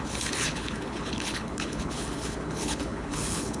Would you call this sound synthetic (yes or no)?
yes